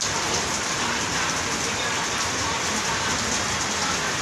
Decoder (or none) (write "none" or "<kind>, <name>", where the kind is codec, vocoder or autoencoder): none